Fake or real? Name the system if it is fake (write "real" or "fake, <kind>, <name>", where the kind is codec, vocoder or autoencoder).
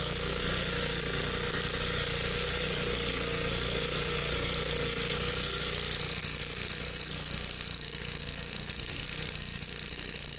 fake, codec, SNAC